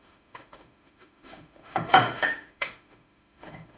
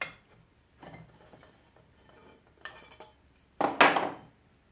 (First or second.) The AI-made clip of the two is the first